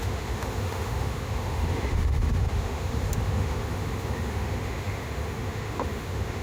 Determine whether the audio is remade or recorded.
remade